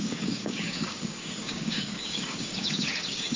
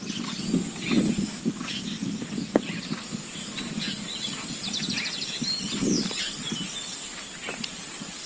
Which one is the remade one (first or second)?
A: first